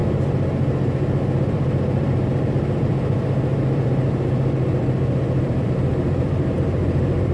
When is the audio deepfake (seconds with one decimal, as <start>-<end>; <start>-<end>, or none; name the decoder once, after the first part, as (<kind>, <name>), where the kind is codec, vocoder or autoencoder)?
1.4-7.3 (vocoder, BigVGAN v2)